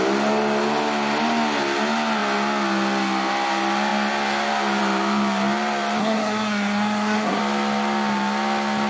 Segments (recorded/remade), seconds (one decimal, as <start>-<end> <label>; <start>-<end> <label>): 0.0-6.0 recorded; 6.0-7.4 remade; 7.4-8.9 recorded